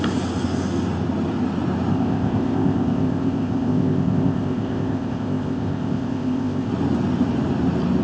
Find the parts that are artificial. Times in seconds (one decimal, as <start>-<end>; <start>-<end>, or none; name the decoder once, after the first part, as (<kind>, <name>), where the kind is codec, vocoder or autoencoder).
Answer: 1.9-6.7 (codec, ZipCodec)